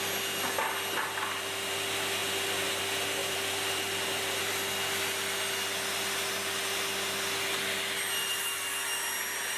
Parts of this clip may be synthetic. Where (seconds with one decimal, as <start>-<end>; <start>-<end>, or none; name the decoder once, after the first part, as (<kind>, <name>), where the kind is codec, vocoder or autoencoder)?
3.2-4.4 (vocoder, BigVGAN v2)